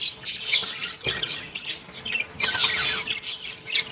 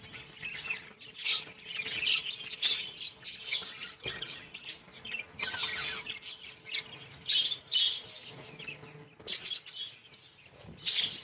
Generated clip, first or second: first